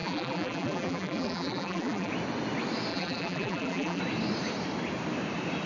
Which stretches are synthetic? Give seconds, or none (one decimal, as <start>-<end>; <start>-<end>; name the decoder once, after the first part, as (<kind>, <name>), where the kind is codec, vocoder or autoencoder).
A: 0.0-2.1 (vocoder, BigVGAN v2); 2.9-4.0